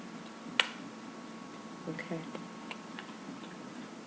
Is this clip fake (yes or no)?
no